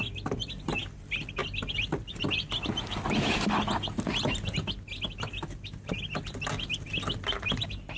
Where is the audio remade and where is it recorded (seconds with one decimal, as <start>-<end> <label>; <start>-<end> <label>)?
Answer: 0.0-8.0 recorded